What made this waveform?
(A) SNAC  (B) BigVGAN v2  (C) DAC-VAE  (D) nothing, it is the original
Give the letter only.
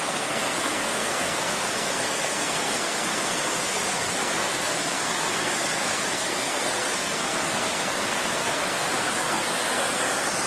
A